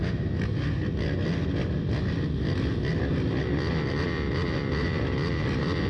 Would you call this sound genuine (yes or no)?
yes